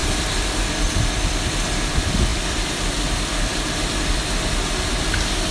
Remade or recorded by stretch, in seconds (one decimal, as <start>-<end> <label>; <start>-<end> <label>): 0.0-0.6 remade; 0.6-2.3 recorded; 2.3-4.2 remade; 4.2-5.5 recorded